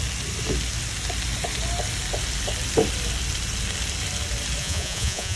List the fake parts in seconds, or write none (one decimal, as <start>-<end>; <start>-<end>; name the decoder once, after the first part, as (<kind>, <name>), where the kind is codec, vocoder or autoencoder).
4.6-5.4 (vocoder, Vocos)